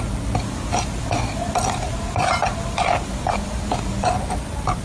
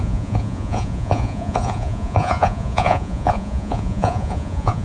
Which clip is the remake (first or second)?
second